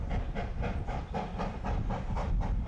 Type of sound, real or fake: fake